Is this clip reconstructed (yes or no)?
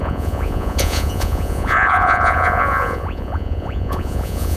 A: yes